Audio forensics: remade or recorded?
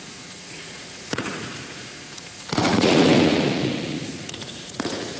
remade